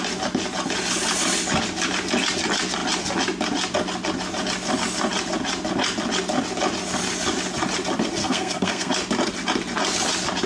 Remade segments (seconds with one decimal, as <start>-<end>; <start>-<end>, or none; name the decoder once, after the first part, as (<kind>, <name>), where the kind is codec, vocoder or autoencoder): 8.2-8.9 (codec, SNAC)